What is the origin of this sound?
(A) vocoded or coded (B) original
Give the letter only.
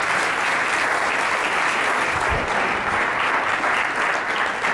B